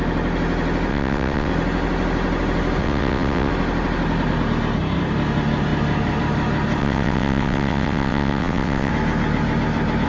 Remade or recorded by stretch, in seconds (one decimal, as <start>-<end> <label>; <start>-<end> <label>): 0.0-0.9 recorded; 0.9-1.5 remade; 1.5-2.8 recorded; 2.8-3.5 remade; 3.5-6.8 recorded; 6.8-8.9 remade; 8.9-10.1 recorded